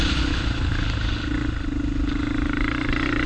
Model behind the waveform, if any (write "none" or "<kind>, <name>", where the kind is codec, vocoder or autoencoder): none